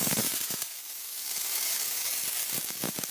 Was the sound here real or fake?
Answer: fake